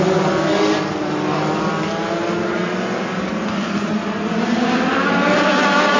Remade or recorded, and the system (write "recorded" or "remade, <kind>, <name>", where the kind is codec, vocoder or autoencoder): recorded